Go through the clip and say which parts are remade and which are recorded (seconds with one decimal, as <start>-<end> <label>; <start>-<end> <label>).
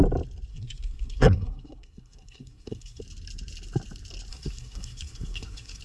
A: 0.0-0.5 recorded; 0.5-3.0 remade; 3.0-4.3 recorded; 4.3-5.8 remade